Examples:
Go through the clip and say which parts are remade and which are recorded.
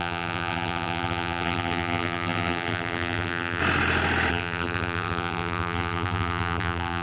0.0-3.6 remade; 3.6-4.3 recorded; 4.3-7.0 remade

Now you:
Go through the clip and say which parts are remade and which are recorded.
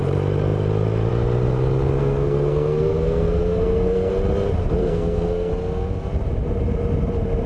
0.0-2.0 recorded; 2.0-4.1 remade; 4.1-4.8 recorded; 4.8-5.5 remade; 5.5-7.5 recorded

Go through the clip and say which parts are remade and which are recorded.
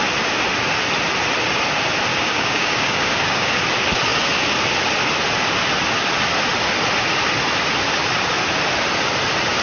0.0-2.1 recorded; 2.1-3.6 remade; 3.6-9.6 recorded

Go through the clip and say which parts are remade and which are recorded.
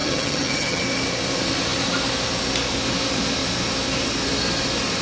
0.0-0.8 remade; 0.8-5.0 recorded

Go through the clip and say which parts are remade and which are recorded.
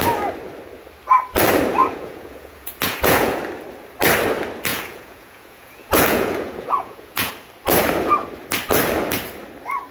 0.0-1.8 recorded; 1.8-3.4 remade; 3.4-4.7 recorded; 4.7-7.3 remade; 7.3-9.9 recorded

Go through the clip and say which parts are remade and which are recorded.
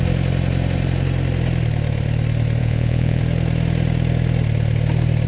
0.0-2.6 recorded; 2.6-3.2 remade; 3.2-5.3 recorded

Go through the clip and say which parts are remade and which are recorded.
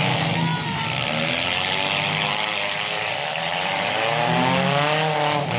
0.0-0.5 recorded; 0.5-3.9 remade; 3.9-5.6 recorded